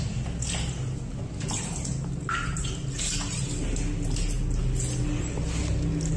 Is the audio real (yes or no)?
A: yes